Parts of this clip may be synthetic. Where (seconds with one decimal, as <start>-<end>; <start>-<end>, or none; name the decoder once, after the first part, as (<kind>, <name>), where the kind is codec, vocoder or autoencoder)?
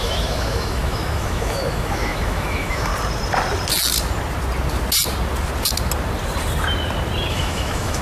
0.0-2.9 (autoencoder, DAC-VAE); 7.3-8.0